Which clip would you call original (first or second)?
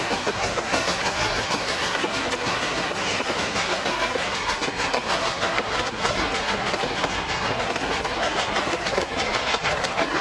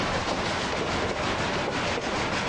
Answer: second